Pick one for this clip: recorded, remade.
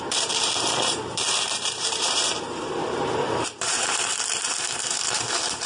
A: remade